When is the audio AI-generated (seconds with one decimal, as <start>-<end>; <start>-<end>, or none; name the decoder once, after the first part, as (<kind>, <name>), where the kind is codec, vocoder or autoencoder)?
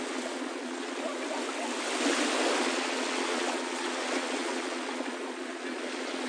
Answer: 0.0-1.2 (vocoder, Vocos); 2.6-6.3